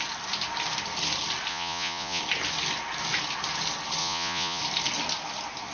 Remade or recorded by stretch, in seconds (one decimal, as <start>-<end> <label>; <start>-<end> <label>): 0.0-1.5 recorded; 1.5-2.2 remade; 2.2-4.0 recorded; 4.0-4.6 remade; 4.6-5.7 recorded